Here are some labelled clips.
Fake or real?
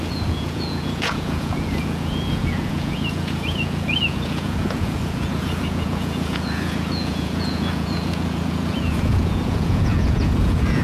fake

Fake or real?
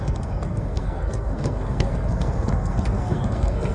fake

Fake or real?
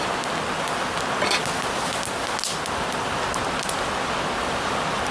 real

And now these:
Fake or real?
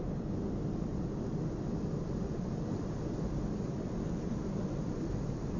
real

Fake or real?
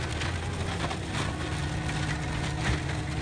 real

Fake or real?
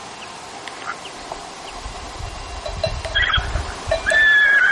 real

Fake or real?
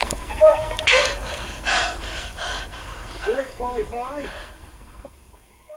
fake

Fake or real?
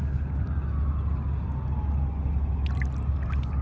real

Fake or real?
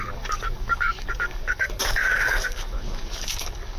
fake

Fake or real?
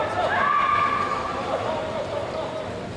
real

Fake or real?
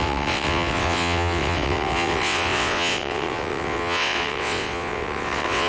fake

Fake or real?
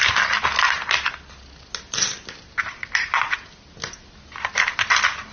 real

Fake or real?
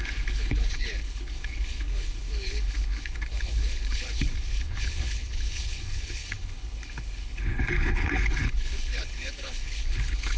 fake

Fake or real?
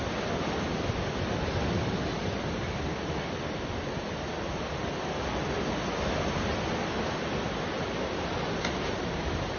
real